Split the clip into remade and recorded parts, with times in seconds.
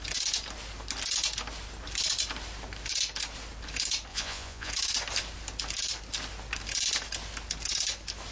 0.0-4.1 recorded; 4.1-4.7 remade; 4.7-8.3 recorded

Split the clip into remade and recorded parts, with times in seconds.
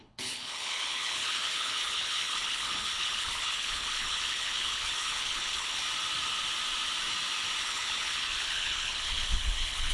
0.0-5.8 remade; 5.8-7.6 recorded; 7.6-9.9 remade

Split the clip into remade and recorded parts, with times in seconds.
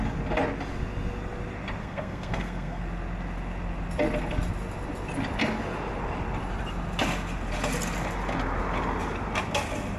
0.0-1.8 recorded; 1.8-2.8 remade; 2.8-10.0 recorded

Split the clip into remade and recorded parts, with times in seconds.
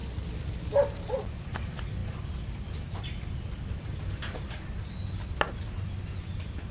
0.0-6.7 recorded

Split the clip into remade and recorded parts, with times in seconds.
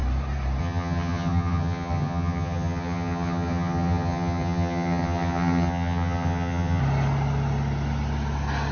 0.0-0.6 recorded; 0.6-6.8 remade; 6.8-8.7 recorded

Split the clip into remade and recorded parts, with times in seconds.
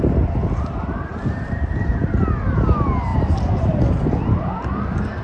0.0-1.1 recorded; 1.1-1.9 remade; 1.9-3.1 recorded; 3.1-3.8 remade; 3.8-5.2 recorded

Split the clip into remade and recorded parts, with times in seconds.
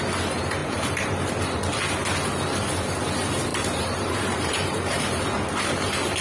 0.0-0.6 recorded; 0.6-1.3 remade; 1.3-3.5 recorded; 3.5-5.0 remade; 5.0-6.2 recorded